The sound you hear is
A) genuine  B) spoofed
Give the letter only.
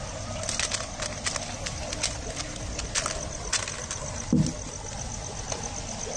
A